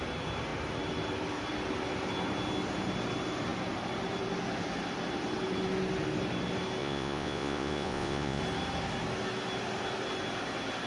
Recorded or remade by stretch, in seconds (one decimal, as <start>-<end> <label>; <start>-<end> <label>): 0.0-6.8 recorded; 6.8-8.4 remade; 8.4-10.9 recorded